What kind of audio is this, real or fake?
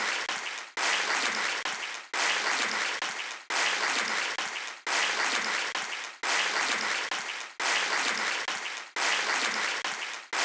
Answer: real